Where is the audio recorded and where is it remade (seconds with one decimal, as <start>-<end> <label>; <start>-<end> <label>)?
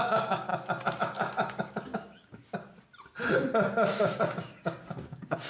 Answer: 0.0-0.5 remade; 0.5-1.0 recorded; 1.0-2.4 remade; 2.4-4.0 recorded; 4.0-5.5 remade